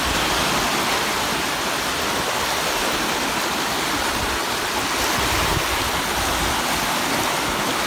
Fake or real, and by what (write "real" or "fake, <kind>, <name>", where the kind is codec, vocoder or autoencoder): real